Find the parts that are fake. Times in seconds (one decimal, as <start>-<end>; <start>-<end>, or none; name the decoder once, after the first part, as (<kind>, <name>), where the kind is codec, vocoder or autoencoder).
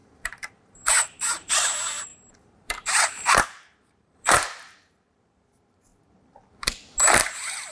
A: 0.0-5.9 (vocoder, BigVGAN v2); 7.3-7.7